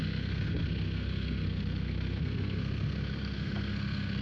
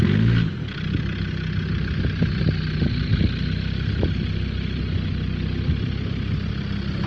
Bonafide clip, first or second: second